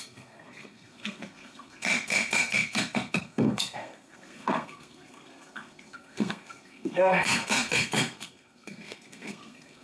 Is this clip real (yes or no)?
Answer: no